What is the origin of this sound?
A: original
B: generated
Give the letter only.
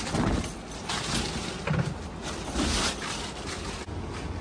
A